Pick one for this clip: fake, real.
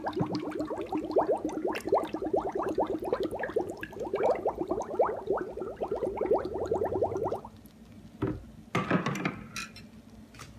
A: real